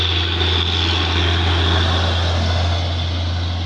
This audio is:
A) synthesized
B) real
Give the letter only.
B